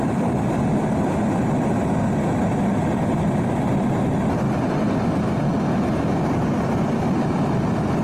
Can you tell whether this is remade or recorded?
recorded